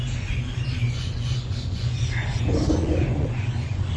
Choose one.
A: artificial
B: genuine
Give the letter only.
A